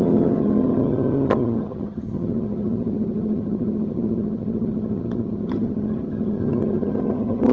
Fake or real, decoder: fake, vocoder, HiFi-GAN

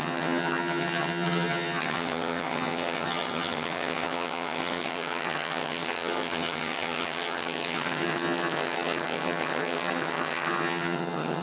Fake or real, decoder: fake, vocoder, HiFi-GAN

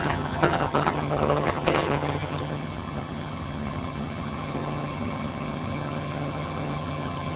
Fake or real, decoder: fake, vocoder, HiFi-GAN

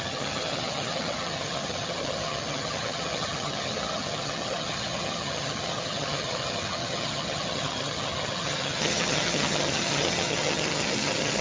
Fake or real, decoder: fake, vocoder, HiFi-GAN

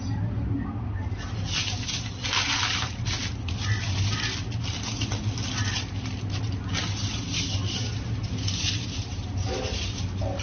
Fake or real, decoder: real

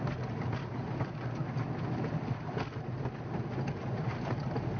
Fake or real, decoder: real